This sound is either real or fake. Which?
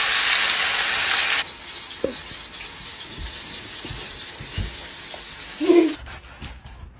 real